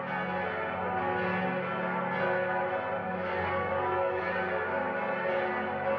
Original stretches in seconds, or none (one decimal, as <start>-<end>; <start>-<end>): 0.0-3.0; 4.2-6.0

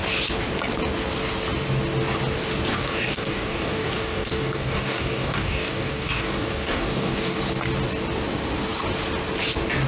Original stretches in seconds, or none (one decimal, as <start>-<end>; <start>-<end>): 0.0-2.7; 7.4-9.9

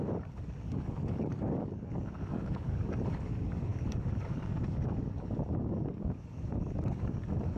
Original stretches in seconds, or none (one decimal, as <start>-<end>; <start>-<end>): none

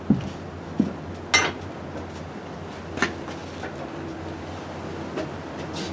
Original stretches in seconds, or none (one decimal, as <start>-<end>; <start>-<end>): 0.0-5.9